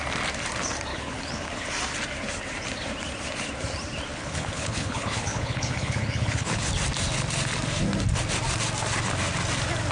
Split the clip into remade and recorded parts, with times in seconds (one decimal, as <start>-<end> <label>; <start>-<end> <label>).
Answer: 0.0-0.9 recorded; 0.9-1.7 remade; 1.7-4.1 recorded; 4.1-6.7 remade; 6.7-9.9 recorded